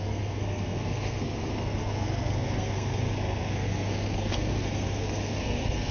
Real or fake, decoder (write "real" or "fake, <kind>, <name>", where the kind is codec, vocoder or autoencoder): fake, codec, SNAC